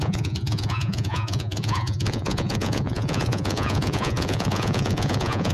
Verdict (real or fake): fake